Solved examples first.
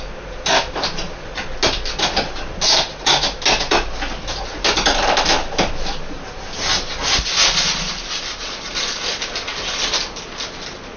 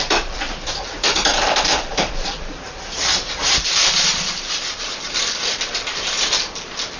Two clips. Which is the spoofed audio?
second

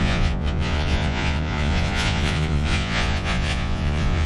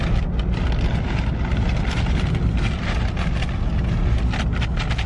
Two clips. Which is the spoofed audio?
first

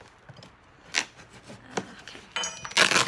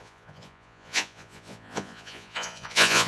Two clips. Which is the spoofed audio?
second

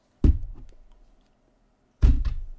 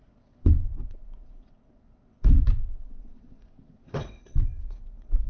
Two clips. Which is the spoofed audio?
second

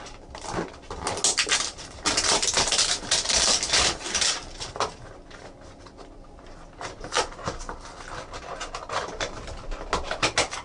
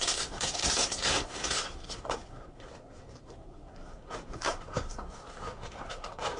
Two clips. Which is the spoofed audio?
second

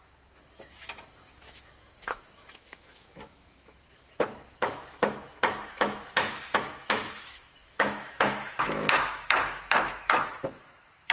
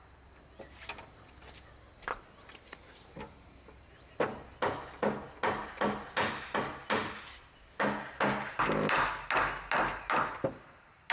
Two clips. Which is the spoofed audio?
first